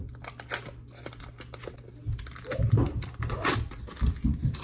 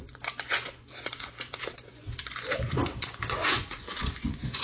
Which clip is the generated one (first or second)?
second